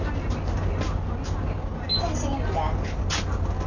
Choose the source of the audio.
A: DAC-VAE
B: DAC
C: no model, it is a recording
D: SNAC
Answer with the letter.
C